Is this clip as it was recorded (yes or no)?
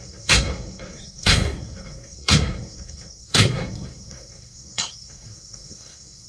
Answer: no